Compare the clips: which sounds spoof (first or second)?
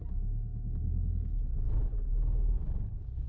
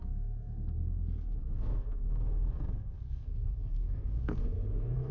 second